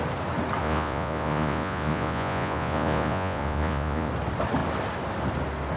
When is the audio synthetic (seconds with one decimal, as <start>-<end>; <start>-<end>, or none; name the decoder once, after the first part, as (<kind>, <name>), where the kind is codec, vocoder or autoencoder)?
0.6-4.1 (vocoder, Vocos)